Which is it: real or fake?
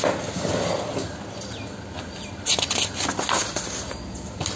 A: real